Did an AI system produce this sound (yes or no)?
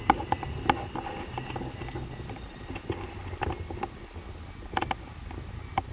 no